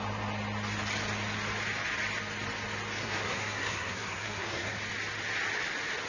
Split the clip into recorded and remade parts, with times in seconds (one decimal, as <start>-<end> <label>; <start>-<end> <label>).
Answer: 0.0-3.0 recorded; 3.0-4.8 remade; 4.8-6.1 recorded